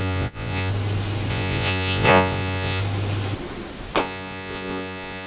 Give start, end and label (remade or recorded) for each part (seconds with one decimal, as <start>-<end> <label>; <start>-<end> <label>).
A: 0.0-0.7 remade; 0.7-1.3 recorded; 1.3-2.8 remade; 2.8-4.0 recorded; 4.0-5.3 remade